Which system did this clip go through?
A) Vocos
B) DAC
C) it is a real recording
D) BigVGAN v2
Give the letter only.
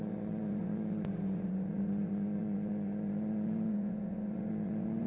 A